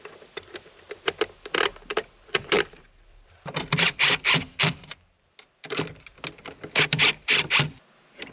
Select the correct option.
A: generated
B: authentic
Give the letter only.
A